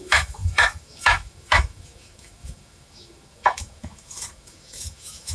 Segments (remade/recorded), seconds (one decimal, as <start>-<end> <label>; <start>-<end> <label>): 0.0-5.3 remade